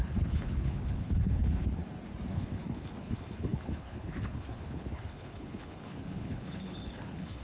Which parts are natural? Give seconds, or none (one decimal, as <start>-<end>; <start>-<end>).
1.8-2.3